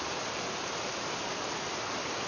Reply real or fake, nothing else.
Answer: real